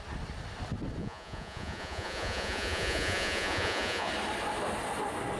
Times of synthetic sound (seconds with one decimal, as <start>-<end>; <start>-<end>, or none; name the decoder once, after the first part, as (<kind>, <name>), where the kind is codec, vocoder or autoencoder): 1.0-4.1 (vocoder, Vocos)